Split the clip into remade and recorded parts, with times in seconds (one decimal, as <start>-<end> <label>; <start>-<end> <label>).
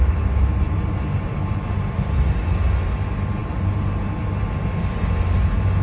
0.0-5.8 recorded